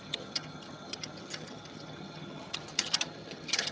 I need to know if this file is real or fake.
fake